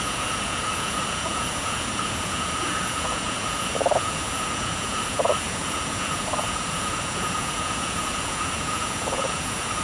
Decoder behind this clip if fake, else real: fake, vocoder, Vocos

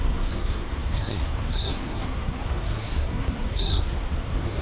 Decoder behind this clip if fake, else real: fake, codec, SNAC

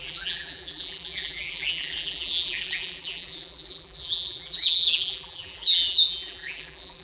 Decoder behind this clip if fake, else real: fake, vocoder, BigVGAN v2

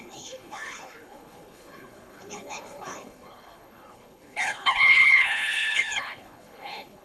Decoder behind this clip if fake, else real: fake, codec, HILCodec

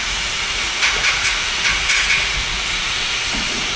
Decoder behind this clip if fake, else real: fake, vocoder, Vocos